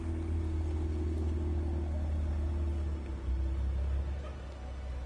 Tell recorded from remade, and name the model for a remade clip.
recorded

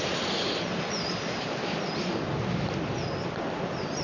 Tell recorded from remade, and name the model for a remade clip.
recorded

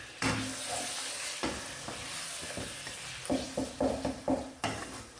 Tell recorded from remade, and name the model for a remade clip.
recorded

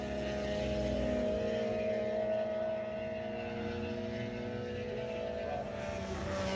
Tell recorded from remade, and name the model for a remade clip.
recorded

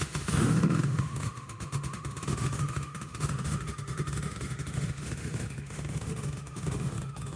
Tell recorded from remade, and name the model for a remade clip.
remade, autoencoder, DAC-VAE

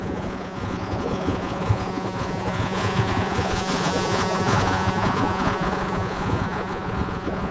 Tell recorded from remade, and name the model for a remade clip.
remade, vocoder, Vocos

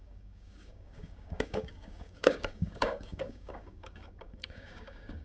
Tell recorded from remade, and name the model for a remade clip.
remade, codec, DAC